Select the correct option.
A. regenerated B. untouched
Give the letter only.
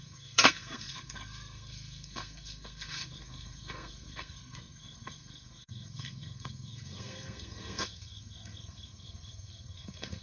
A